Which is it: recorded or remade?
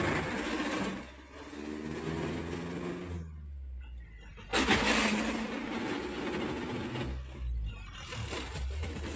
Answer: recorded